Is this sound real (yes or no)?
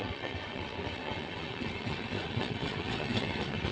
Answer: no